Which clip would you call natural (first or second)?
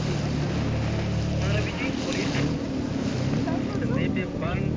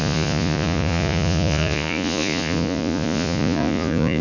first